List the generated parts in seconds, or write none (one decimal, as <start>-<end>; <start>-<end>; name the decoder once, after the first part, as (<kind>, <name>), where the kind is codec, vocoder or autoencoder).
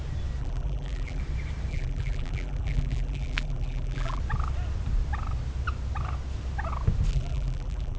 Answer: 0.4-1.2 (vocoder, BigVGAN v2); 1.7-4.2; 7.1-8.0